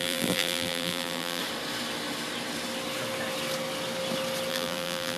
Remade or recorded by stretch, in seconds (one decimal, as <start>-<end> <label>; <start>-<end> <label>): 0.0-1.4 remade; 1.4-4.5 recorded; 4.5-5.2 remade